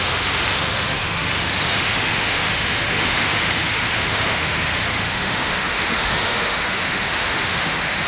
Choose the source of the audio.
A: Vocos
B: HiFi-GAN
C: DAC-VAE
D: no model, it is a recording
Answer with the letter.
C